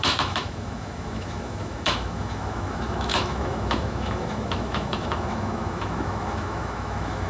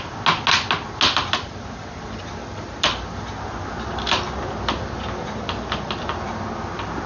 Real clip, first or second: second